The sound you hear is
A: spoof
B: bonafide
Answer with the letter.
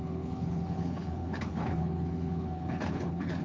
A